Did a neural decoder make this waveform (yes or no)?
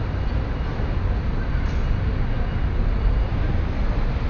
no